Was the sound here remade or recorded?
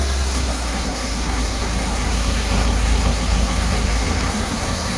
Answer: remade